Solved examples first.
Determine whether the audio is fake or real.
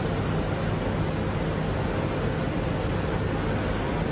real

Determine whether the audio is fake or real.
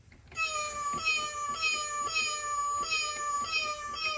real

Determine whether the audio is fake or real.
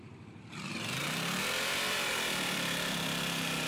fake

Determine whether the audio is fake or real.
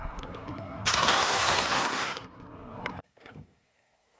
fake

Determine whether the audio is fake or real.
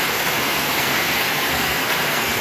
fake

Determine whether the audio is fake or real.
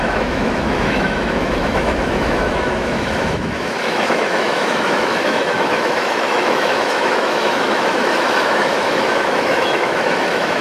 fake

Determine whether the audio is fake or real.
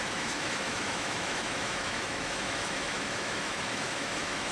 fake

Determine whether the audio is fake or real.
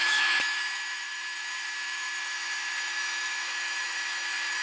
fake